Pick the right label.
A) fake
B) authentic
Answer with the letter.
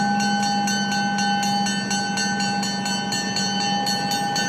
B